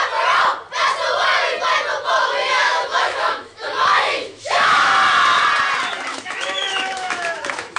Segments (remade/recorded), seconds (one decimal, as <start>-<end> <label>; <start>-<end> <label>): 0.0-2.2 recorded; 2.2-4.9 remade; 4.9-6.1 recorded; 6.1-7.8 remade